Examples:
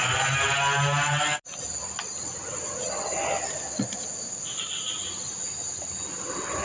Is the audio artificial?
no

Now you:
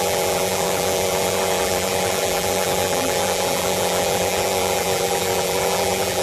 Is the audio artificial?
yes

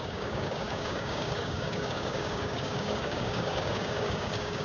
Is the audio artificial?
yes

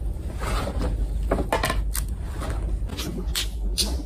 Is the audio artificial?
no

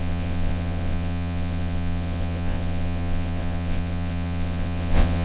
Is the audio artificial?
yes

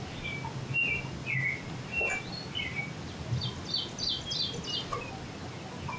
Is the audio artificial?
no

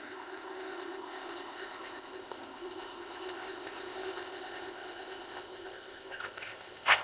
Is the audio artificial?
yes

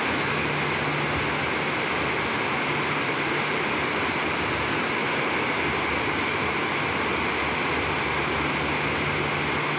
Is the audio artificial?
no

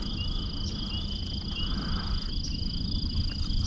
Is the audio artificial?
no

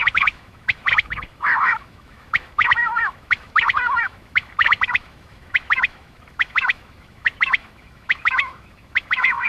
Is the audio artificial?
yes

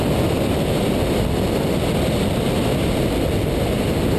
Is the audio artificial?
no